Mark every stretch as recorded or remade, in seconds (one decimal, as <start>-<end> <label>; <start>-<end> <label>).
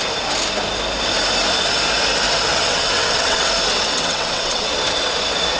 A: 0.0-2.5 recorded; 2.5-3.5 remade; 3.5-3.9 recorded; 3.9-4.7 remade; 4.7-5.6 recorded